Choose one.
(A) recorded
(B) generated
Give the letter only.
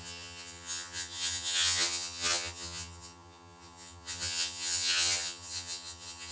B